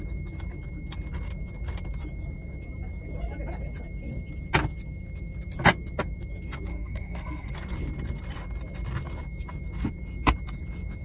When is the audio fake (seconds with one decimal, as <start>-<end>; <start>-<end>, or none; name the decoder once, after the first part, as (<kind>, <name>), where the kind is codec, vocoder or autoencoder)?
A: 6.7-7.5 (codec, SNAC)